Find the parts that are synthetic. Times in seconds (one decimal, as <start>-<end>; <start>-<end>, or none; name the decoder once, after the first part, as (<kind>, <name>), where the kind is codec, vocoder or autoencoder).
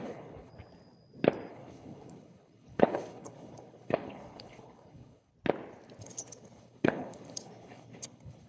0.0-0.5 (codec, HILCodec); 1.5-5.3; 6.0-8.5